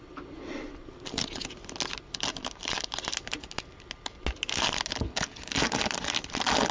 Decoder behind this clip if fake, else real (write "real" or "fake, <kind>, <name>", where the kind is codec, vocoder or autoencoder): real